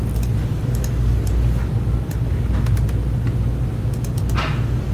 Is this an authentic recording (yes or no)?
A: yes